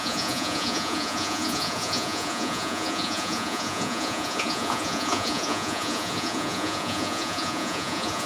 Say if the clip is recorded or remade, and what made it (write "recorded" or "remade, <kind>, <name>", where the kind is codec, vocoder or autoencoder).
remade, vocoder, Vocos